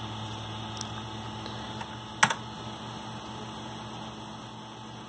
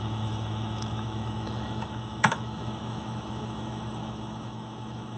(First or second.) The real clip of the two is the first